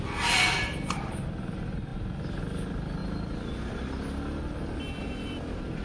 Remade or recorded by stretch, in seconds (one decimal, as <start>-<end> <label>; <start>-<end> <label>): 0.0-5.8 recorded